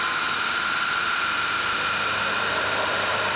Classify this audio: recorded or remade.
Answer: remade